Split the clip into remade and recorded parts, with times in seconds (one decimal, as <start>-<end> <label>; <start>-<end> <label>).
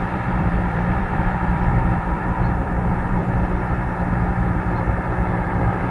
0.0-3.2 remade; 3.2-4.5 recorded; 4.5-5.9 remade